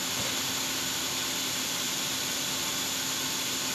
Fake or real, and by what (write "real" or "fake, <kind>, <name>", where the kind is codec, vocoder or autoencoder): fake, vocoder, BigVGAN v2